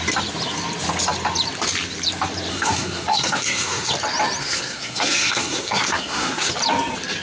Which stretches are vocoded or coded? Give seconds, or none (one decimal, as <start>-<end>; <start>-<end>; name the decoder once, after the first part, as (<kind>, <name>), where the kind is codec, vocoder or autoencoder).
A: 2.5-3.9 (codec, SNAC); 4.4-6.5